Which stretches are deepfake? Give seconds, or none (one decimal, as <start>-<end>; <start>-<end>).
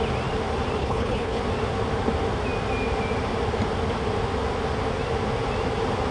0.8-1.4